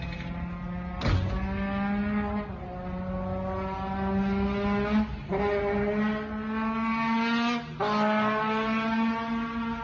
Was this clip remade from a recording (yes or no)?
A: no